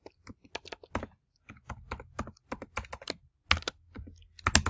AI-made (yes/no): no